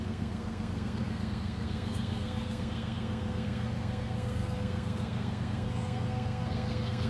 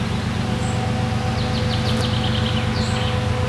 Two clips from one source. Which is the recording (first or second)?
second